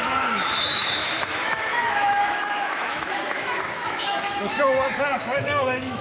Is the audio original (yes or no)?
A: no